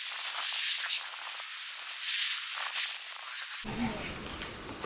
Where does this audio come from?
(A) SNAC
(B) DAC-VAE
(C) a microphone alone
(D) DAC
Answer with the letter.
C